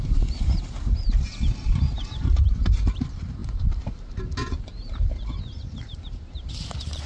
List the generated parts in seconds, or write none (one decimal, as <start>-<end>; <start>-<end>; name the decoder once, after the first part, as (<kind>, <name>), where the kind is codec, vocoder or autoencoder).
0.0-7.1 (vocoder, BigVGAN v2)